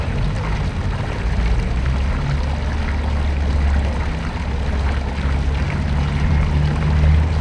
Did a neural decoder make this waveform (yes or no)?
no